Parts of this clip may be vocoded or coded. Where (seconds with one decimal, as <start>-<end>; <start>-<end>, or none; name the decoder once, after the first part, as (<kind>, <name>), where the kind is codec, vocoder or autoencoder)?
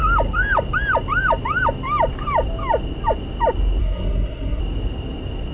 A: 3.8-4.6 (codec, SNAC)